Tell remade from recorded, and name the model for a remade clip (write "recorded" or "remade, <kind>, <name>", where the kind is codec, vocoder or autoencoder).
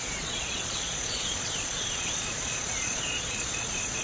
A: remade, vocoder, Vocos